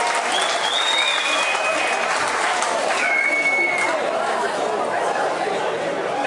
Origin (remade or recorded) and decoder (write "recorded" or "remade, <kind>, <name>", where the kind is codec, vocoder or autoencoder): recorded